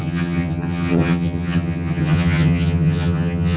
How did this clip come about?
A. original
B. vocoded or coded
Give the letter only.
B